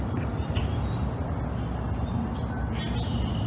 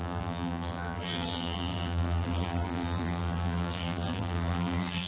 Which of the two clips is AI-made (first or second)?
second